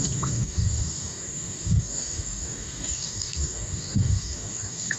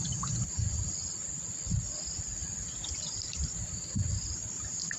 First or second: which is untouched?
second